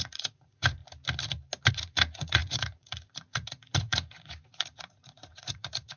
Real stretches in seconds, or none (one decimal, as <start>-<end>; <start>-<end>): 0.8-1.7